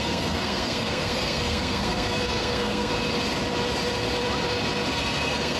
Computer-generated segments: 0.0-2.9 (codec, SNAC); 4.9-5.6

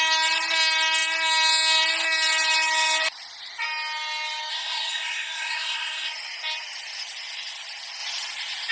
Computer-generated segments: 4.5-6.1 (codec, SNAC)

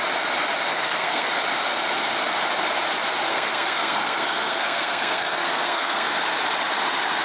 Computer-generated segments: 0.7-1.3 (codec, SNAC); 3.3-6.1